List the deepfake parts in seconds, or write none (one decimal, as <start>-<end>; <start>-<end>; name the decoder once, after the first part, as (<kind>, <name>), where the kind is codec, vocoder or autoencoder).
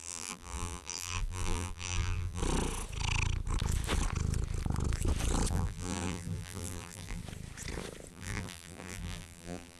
0.0-2.4 (vocoder, BigVGAN v2); 5.5-7.2; 8.1-9.8